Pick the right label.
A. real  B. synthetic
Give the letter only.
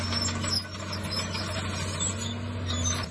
A